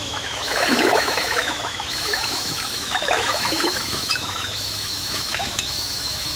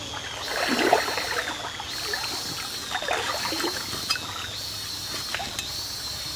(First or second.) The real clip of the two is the second